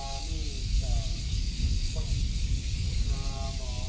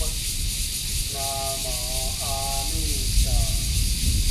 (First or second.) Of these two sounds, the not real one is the first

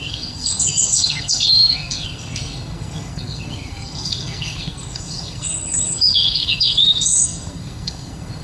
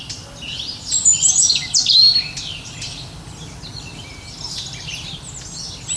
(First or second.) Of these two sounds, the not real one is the first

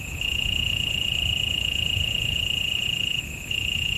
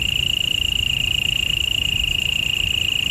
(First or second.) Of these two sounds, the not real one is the first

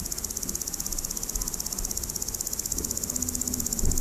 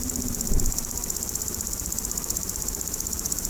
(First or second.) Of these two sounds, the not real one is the second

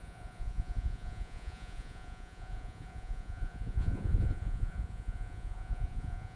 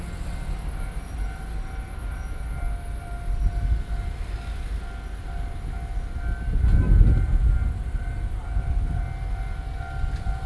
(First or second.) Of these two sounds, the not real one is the first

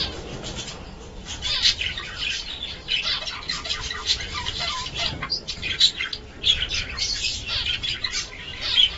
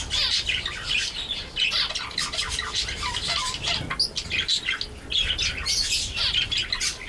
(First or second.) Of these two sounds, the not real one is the first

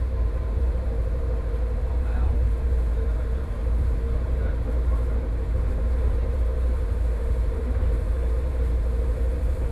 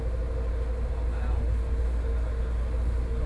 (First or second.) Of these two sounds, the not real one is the first